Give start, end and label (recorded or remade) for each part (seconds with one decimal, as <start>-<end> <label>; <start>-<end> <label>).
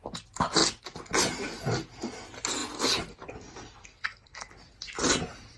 0.0-3.8 recorded; 3.8-4.5 remade; 4.5-5.6 recorded